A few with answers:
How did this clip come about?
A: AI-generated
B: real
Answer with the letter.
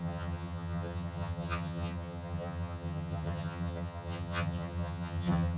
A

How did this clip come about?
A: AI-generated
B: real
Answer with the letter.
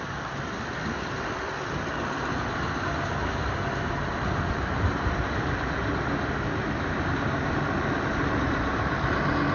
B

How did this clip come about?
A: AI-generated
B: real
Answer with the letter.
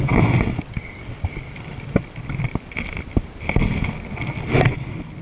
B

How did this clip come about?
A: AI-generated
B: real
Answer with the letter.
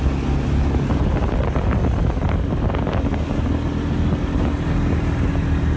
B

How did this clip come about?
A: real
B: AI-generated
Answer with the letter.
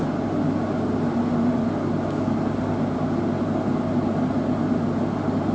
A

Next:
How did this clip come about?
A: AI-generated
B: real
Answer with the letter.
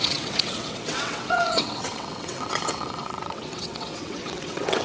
A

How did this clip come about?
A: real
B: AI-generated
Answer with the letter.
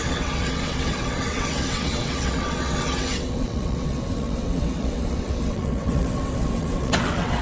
B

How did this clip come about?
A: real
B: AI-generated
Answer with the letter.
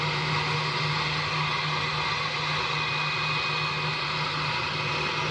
A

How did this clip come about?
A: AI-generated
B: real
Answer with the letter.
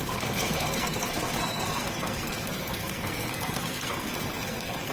A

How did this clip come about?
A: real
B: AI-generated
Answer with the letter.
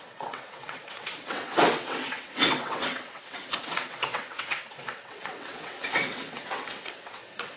B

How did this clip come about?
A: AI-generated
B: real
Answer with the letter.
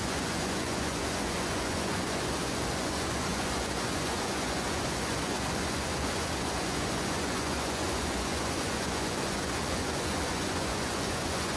A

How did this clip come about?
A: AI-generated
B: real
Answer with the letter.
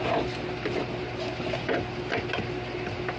B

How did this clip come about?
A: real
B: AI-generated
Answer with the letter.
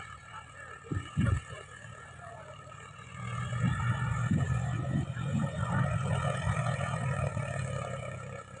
B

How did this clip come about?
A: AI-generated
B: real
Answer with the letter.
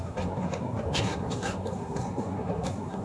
A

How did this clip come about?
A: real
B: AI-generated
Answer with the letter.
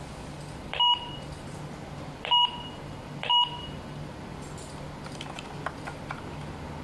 B